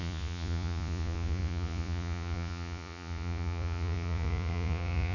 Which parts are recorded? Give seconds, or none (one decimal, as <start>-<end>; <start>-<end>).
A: none